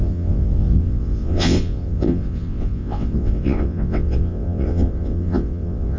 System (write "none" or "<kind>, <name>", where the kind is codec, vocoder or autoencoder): vocoder, WaveNeXt